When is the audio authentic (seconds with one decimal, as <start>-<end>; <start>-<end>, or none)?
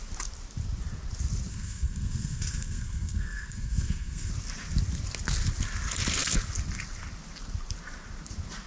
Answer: 0.0-1.5; 4.3-8.7